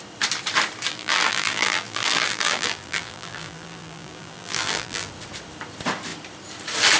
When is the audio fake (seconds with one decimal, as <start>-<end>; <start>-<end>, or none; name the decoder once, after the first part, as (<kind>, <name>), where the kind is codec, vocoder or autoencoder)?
0.9-5.1 (vocoder, BigVGAN v2)